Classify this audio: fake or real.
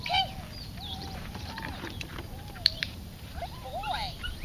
fake